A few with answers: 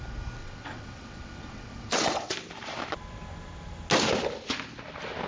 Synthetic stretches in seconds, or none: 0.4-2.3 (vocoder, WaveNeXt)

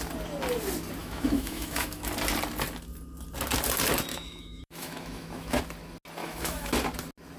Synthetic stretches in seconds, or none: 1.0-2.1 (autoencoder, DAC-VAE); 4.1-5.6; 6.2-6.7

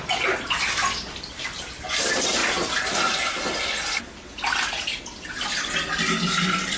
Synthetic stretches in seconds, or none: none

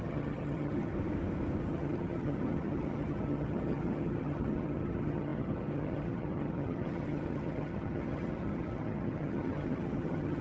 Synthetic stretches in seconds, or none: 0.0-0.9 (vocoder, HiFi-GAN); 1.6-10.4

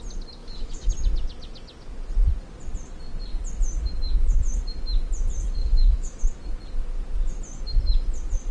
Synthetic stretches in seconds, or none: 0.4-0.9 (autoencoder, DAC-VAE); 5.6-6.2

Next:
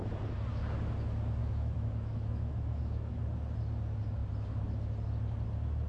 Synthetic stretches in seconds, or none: 1.4-3.2 (autoencoder, DAC-VAE)

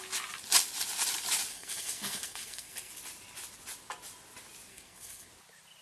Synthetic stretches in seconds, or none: 1.5-2.9 (codec, SNAC); 4.7-5.3

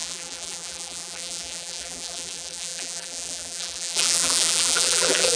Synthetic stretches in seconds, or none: 0.0-5.4 (vocoder, BigVGAN v2)